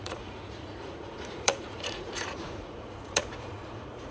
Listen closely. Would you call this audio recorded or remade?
remade